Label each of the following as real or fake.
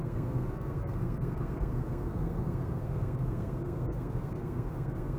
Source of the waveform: fake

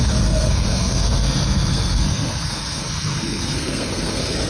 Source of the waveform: fake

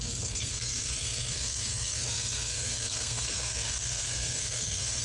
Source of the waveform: fake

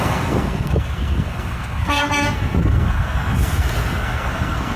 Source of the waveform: fake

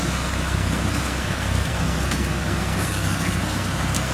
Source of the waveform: fake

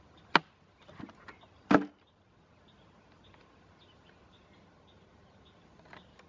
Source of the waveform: real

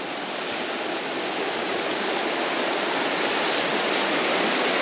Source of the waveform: real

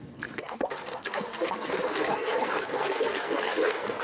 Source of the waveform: fake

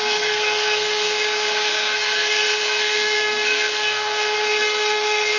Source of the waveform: fake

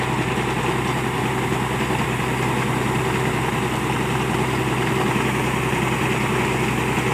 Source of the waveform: real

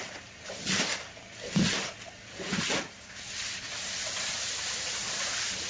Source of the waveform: real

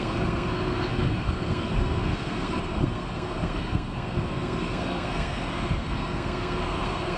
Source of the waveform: fake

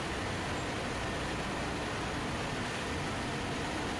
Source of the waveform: real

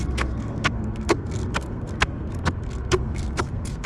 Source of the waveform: fake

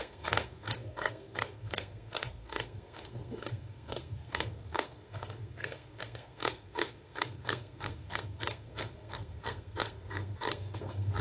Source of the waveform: fake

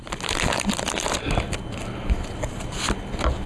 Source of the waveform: real